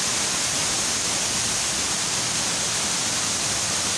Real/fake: real